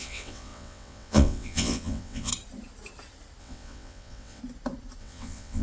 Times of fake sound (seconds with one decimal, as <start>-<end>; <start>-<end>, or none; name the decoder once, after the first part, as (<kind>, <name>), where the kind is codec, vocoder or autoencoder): 0.0-2.3 (vocoder, WaveNeXt); 3.4-4.4; 5.0-5.6